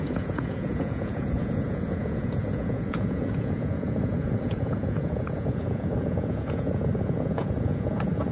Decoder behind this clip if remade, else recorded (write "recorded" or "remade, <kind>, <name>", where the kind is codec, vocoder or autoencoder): remade, vocoder, Vocos